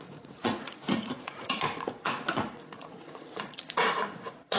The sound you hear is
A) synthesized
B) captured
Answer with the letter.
A